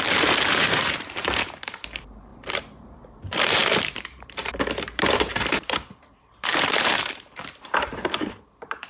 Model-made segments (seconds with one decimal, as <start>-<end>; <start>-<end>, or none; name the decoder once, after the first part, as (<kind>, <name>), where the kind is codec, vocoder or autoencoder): 0.0-8.9 (vocoder, BigVGAN v2)